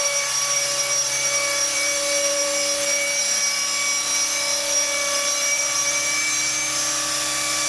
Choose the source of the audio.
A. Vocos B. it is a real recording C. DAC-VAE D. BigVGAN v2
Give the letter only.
D